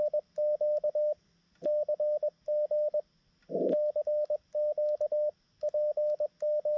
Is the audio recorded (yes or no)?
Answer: yes